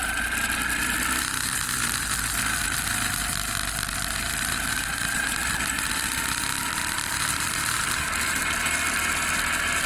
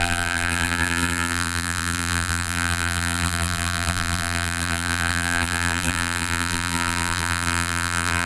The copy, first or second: second